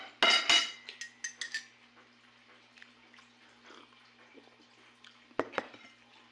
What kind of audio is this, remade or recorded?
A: recorded